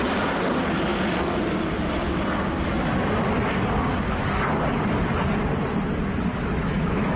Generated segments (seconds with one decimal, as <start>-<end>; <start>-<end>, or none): 6.3-7.2